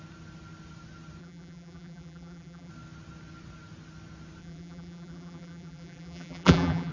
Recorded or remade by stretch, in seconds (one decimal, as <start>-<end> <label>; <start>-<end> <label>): 0.0-1.2 recorded; 1.2-2.7 remade; 2.7-4.4 recorded; 4.4-6.9 remade